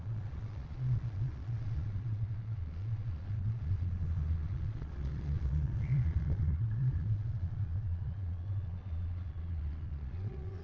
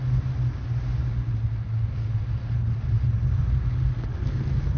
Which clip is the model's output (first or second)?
first